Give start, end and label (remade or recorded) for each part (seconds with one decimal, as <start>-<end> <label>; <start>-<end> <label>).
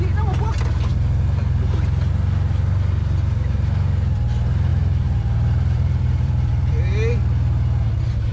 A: 0.0-2.5 recorded; 2.5-3.0 remade; 3.0-4.7 recorded; 4.7-6.8 remade; 6.8-8.3 recorded